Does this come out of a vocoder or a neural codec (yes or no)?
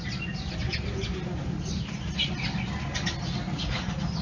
no